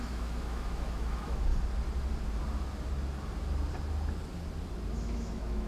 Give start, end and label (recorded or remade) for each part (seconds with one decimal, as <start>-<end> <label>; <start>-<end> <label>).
0.0-1.5 remade; 1.5-4.9 recorded; 4.9-5.7 remade